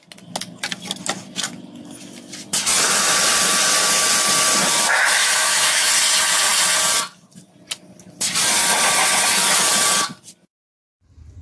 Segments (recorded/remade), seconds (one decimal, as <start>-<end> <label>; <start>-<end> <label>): 0.0-5.2 recorded; 5.2-5.9 remade; 5.9-11.4 recorded